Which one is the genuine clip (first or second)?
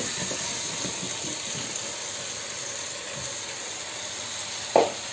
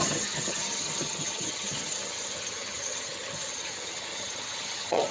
first